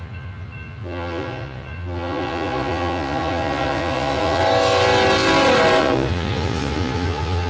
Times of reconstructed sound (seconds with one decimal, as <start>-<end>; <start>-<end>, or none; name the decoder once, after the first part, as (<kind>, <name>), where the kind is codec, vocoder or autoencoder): 0.0-4.4 (vocoder, Vocos); 5.8-7.5